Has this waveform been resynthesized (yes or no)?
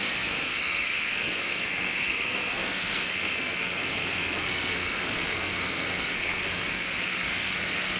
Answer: yes